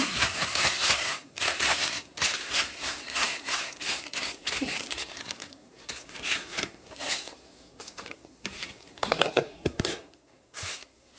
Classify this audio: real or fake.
fake